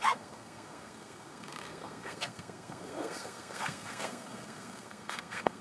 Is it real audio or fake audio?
fake